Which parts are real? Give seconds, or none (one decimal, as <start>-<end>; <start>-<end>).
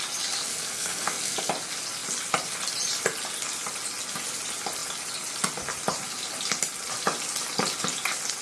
0.0-0.5; 1.5-8.4